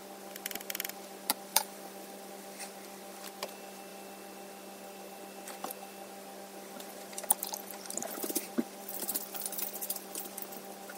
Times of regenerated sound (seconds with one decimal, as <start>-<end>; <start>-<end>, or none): 1.5-2.3; 7.3-9.2